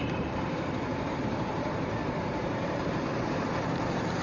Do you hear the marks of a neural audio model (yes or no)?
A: yes